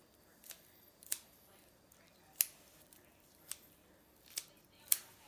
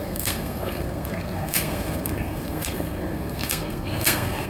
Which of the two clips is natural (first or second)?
first